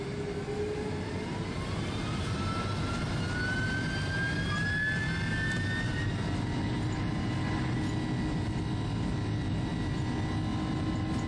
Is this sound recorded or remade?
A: recorded